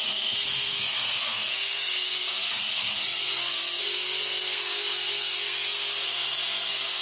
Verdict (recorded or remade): remade